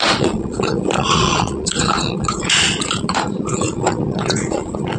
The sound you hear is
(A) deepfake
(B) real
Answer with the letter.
A